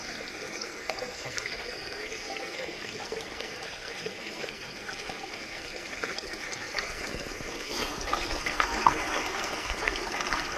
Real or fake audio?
fake